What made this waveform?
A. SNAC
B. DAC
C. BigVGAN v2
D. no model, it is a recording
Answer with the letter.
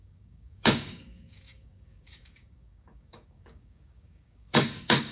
B